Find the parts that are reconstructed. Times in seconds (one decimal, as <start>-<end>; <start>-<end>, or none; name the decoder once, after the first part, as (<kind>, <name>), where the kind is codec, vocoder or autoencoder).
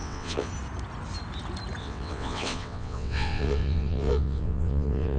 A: 0.0-0.5 (vocoder, WaveNeXt); 1.8-5.2